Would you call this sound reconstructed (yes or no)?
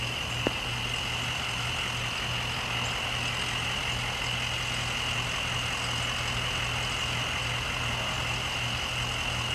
no